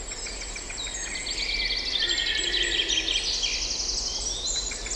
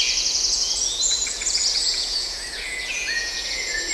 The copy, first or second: second